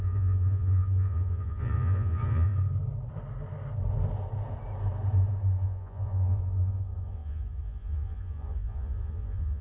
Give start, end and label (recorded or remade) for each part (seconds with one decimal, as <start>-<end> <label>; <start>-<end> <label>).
0.0-2.5 remade; 2.5-5.6 recorded; 5.6-9.6 remade